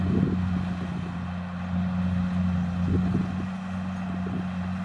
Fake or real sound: real